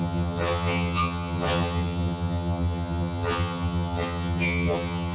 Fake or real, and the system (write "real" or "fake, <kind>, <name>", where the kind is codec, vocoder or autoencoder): fake, vocoder, HiFi-GAN